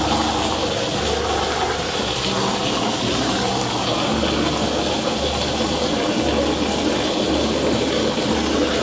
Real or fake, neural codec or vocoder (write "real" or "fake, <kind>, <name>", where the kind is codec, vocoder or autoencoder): real